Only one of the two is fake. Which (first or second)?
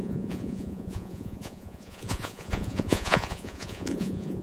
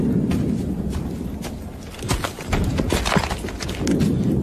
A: first